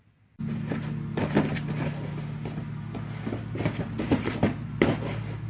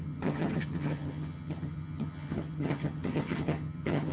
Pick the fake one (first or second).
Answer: second